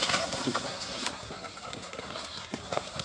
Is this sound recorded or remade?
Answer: remade